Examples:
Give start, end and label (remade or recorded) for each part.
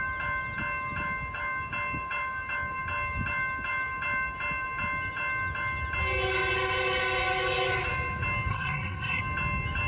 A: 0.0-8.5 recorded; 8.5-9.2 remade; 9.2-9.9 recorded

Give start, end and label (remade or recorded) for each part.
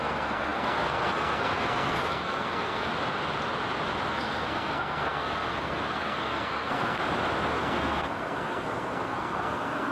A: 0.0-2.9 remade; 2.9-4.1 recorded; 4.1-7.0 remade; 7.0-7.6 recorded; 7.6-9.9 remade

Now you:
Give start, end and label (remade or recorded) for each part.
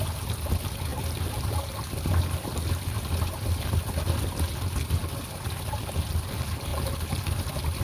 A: 0.0-7.8 recorded